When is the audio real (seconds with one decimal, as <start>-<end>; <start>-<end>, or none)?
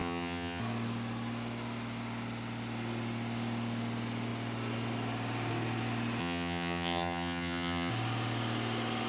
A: 0.6-6.2; 7.9-9.1